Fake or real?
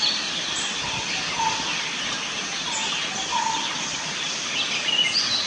real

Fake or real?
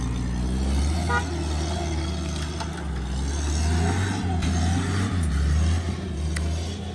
real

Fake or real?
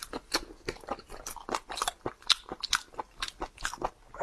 real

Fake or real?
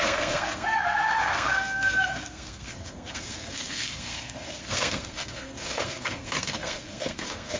fake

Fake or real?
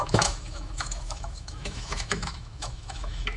fake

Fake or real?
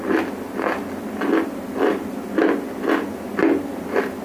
real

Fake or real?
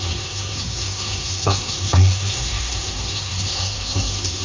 fake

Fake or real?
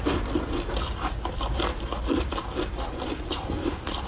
fake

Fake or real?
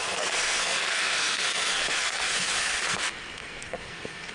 fake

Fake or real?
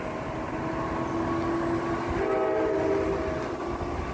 real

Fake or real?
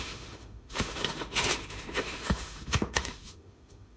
fake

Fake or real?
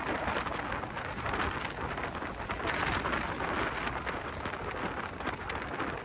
real